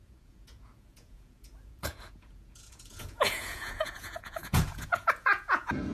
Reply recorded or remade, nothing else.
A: remade